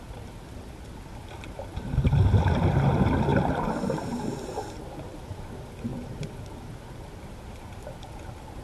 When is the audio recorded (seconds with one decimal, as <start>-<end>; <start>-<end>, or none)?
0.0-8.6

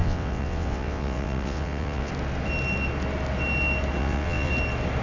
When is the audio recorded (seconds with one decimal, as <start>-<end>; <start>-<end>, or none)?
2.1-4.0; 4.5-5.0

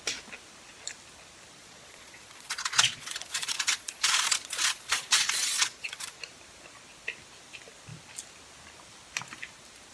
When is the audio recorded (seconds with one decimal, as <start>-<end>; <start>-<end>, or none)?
0.0-1.6; 6.3-9.9

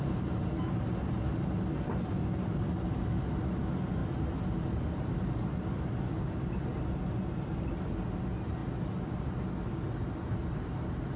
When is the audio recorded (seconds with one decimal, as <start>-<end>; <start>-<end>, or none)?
0.0-11.2

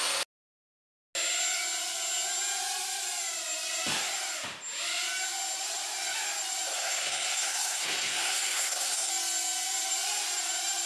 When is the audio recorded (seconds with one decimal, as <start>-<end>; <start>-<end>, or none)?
0.0-6.7; 9.1-10.9